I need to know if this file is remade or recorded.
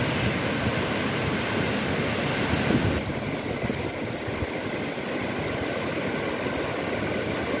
recorded